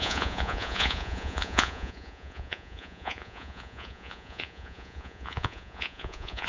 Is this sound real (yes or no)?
no